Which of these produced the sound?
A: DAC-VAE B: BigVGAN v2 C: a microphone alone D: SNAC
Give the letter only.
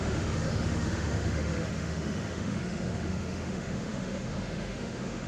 A